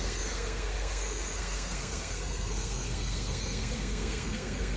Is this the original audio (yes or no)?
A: no